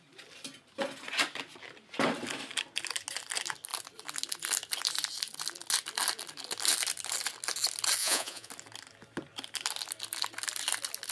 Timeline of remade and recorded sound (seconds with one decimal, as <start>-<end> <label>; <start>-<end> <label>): 0.0-8.0 recorded; 8.0-8.5 remade; 8.5-11.1 recorded